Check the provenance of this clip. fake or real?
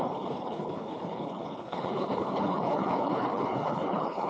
fake